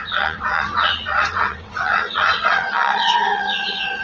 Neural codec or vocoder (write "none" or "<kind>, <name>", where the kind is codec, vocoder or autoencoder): vocoder, WaveNeXt